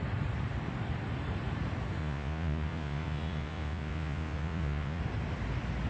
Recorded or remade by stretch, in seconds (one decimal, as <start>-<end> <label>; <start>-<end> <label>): 0.0-2.0 recorded; 2.0-5.0 remade; 5.0-5.9 recorded